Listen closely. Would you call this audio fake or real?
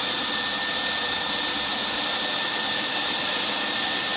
real